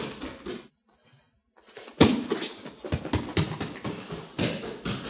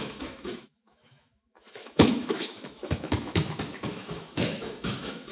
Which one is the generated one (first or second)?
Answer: second